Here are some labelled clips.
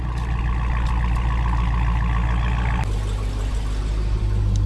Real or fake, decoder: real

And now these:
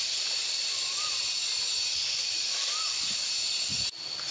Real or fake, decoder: real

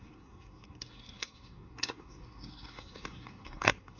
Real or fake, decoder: fake, codec, SNAC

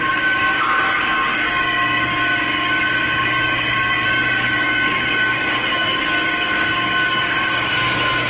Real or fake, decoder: fake, codec, DAC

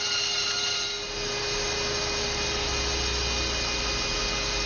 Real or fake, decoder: real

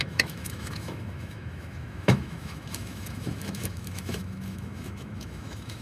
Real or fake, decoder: fake, autoencoder, DAC-VAE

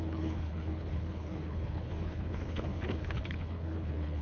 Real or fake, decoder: fake, codec, HILCodec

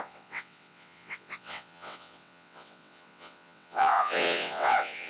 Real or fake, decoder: fake, vocoder, WaveNeXt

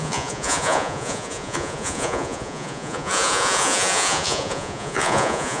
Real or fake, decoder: fake, vocoder, Vocos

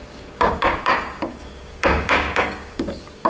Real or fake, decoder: fake, codec, DAC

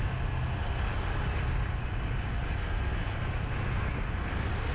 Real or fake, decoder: real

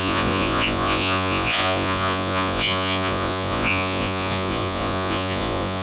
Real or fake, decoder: fake, vocoder, Vocos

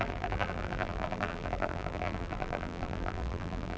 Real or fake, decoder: fake, vocoder, BigVGAN v2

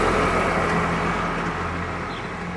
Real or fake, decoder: real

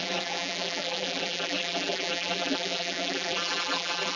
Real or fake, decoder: fake, vocoder, BigVGAN v2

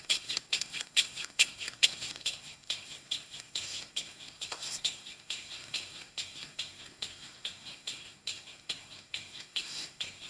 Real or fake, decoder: fake, codec, SNAC